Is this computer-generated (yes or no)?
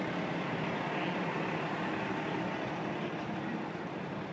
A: no